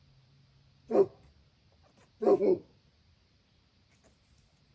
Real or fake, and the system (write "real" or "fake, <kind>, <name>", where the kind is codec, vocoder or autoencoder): fake, vocoder, BigVGAN v2